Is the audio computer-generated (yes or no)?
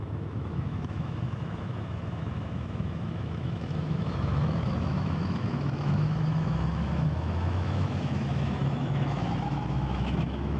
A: yes